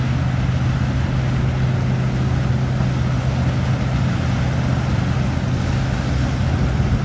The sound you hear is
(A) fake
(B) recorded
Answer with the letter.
B